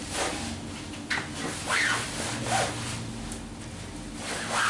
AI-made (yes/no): no